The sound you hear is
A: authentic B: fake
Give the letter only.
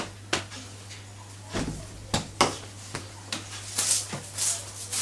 A